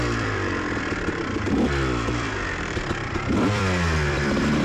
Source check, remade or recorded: remade